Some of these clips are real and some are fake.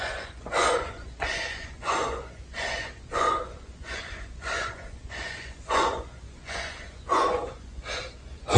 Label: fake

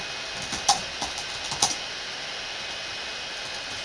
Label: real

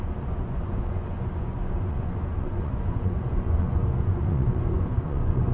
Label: fake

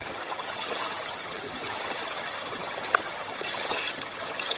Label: fake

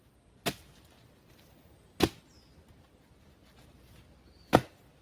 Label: real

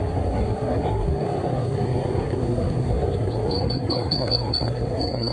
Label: fake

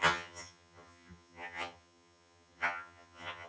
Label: fake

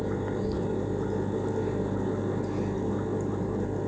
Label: real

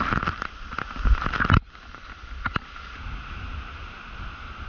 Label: real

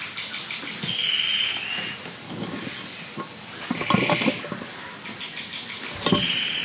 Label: real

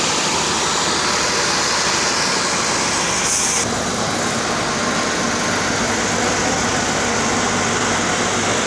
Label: real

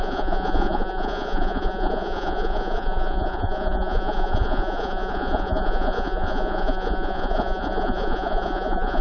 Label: fake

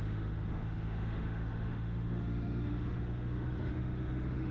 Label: fake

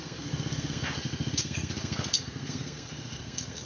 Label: fake